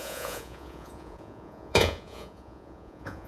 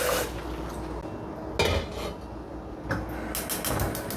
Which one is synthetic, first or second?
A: first